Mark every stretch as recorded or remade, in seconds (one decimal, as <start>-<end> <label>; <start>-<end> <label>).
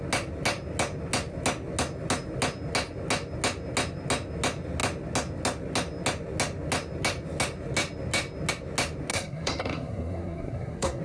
0.0-9.1 recorded; 9.1-11.0 remade